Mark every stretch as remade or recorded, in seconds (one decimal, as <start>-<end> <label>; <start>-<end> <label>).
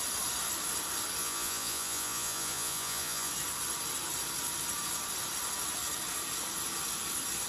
0.0-1.2 recorded; 1.2-3.3 remade; 3.3-7.5 recorded